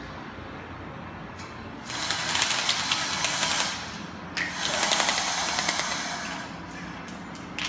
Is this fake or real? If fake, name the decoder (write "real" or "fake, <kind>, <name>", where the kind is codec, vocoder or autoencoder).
real